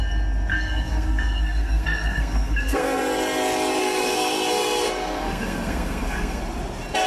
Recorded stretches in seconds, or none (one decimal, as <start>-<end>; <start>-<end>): 0.0-0.5; 3.0-3.8; 6.4-7.1